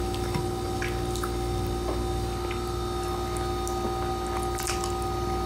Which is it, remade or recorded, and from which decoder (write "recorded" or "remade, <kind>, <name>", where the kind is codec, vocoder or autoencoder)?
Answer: recorded